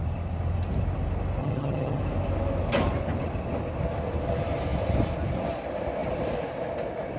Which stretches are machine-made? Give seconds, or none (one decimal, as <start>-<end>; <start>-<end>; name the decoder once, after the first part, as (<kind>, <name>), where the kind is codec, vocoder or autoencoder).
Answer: 1.4-2.0 (vocoder, HiFi-GAN)